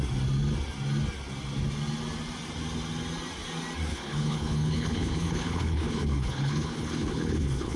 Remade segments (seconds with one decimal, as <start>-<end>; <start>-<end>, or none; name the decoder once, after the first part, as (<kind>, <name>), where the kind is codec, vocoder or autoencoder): 3.9-7.8 (codec, HILCodec)